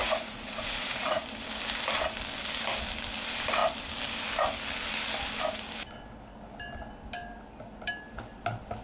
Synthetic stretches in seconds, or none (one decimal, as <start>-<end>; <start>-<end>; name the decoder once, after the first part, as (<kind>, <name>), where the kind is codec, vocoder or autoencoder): 0.0-1.2 (vocoder, Vocos)